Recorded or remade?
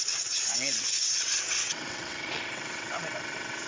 remade